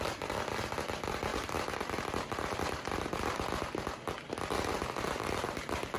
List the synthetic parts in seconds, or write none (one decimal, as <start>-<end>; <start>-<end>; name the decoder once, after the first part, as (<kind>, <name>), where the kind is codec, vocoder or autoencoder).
1.3-3.0 (vocoder, BigVGAN v2)